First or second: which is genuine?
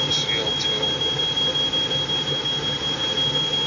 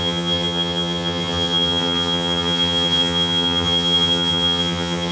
first